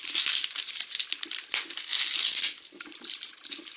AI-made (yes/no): no